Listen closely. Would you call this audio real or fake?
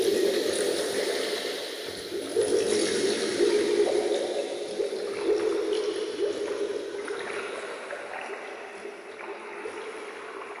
real